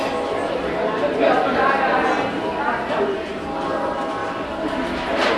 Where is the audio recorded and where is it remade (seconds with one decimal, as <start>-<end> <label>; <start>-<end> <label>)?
0.0-5.4 recorded

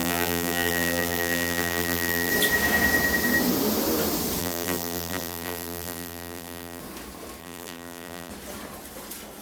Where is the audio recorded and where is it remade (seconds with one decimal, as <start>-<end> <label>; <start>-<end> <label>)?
0.0-2.3 remade; 2.3-4.4 recorded; 4.4-6.8 remade; 6.8-7.4 recorded; 7.4-8.3 remade; 8.3-9.4 recorded